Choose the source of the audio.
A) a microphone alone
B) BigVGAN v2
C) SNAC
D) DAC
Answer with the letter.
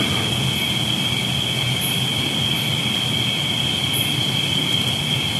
A